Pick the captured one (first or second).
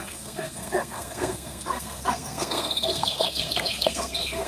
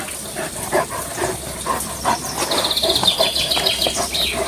second